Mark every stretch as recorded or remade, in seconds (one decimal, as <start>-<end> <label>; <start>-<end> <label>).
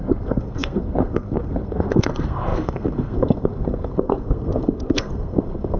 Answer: 0.0-5.8 remade